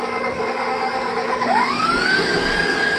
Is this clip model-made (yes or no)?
yes